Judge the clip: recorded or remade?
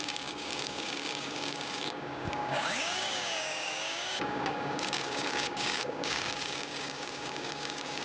remade